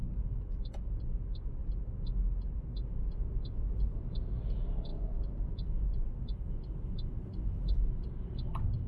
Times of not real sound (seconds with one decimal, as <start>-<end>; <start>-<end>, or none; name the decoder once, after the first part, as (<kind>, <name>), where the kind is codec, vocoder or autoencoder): none